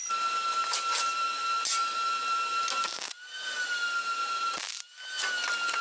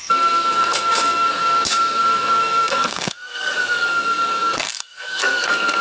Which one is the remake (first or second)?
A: second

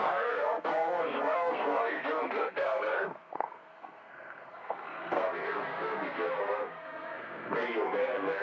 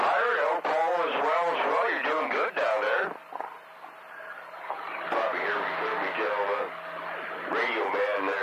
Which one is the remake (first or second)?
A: first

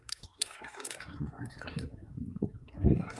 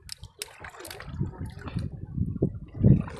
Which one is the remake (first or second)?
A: first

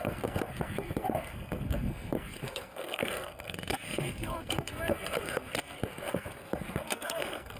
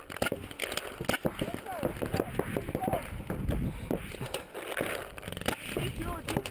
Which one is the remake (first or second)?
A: first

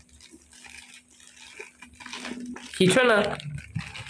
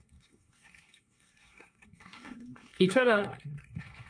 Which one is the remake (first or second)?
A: second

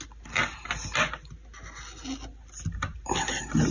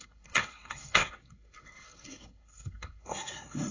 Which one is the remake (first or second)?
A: second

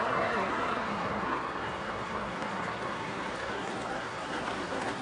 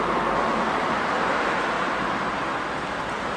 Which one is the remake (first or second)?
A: first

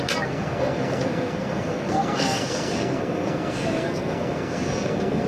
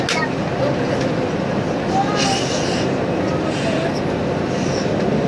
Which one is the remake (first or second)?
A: first